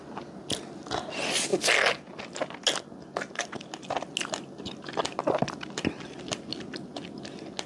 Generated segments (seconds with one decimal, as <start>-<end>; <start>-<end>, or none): none